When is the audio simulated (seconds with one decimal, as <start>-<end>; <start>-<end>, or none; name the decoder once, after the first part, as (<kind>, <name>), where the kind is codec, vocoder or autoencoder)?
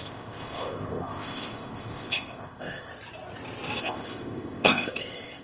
0.0-2.9 (codec, ZipCodec); 3.8-5.4